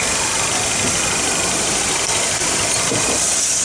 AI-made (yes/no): no